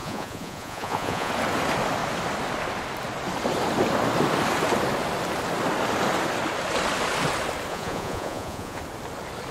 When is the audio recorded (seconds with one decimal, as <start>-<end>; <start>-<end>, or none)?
1.3-7.7; 8.8-9.5